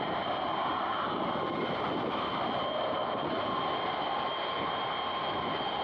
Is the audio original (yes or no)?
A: yes